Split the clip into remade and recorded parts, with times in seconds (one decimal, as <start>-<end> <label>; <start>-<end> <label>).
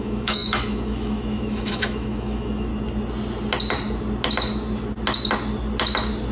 0.0-2.7 remade; 2.7-6.3 recorded